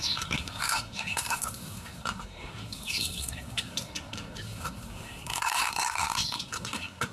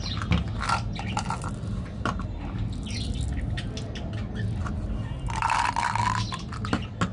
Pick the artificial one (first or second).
first